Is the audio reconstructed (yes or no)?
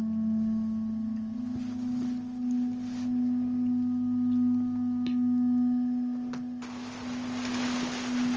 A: no